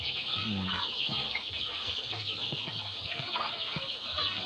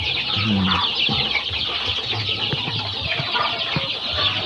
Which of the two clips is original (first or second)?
second